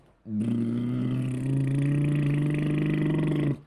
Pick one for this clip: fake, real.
real